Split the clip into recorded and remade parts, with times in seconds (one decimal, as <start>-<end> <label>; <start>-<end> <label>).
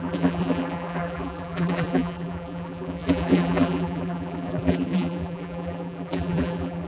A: 0.0-6.9 remade